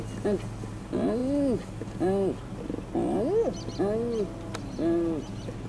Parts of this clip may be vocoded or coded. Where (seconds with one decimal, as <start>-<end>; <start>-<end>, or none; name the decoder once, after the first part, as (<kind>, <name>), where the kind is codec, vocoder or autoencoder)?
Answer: none